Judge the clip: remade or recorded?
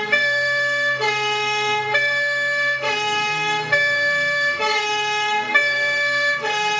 remade